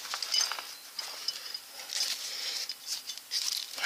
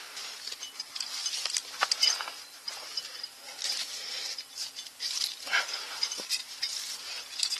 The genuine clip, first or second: first